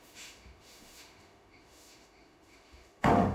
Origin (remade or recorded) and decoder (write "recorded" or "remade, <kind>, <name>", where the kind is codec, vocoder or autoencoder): remade, autoencoder, DAC-VAE